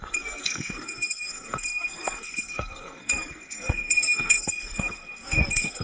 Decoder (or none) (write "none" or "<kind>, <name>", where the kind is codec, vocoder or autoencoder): codec, SNAC